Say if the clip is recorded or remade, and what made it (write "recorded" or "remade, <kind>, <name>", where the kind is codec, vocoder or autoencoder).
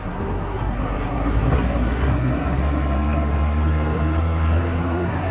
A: remade, codec, SNAC